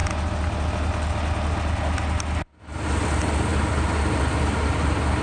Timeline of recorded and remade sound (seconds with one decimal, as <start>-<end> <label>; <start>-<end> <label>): 0.0-5.2 recorded